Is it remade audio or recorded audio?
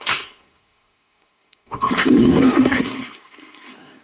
remade